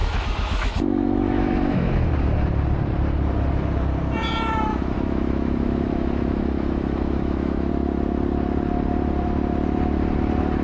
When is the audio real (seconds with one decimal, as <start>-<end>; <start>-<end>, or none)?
2.1-4.7; 7.7-10.6